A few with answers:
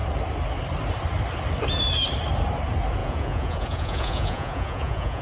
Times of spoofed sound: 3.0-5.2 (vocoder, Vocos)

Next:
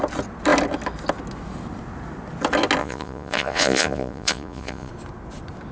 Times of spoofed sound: 2.8-4.9 (vocoder, Vocos)

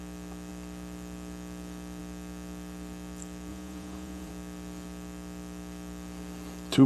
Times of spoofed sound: 3.5-4.3 (vocoder, Vocos)

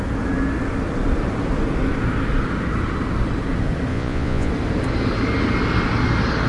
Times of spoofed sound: 3.9-4.5 (vocoder, Vocos)

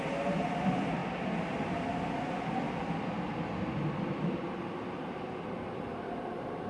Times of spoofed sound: none

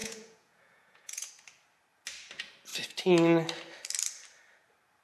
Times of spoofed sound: 0.0-1.3 (vocoder, Vocos)